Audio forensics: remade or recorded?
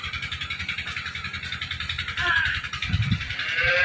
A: remade